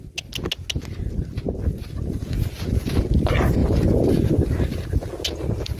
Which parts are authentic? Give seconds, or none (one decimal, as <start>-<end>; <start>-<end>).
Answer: 0.0-5.8